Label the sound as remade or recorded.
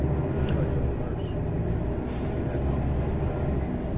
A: recorded